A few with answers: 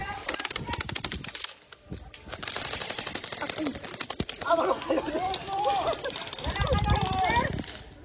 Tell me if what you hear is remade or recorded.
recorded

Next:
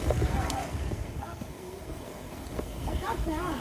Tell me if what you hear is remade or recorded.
remade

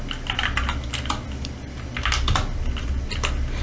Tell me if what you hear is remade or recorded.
recorded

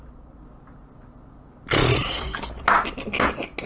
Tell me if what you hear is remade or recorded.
recorded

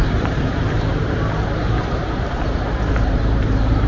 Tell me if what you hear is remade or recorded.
remade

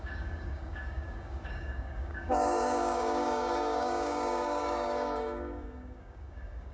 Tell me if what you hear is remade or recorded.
remade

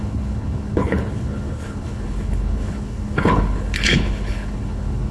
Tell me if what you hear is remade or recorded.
remade